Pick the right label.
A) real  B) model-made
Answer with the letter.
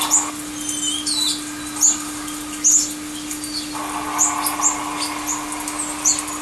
A